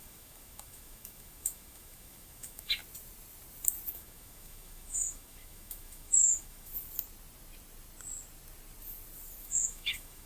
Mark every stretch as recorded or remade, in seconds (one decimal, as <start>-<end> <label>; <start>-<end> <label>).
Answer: 0.0-2.8 remade; 2.8-3.9 recorded; 3.9-6.7 remade; 6.7-9.4 recorded; 9.4-10.3 remade